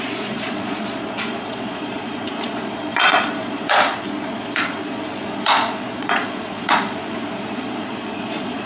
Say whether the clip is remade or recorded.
remade